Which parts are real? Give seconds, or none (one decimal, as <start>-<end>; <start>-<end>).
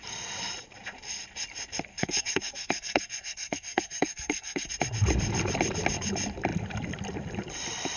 0.0-1.9; 4.7-8.0